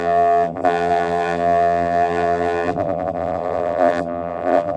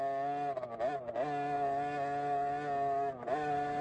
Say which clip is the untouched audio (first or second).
second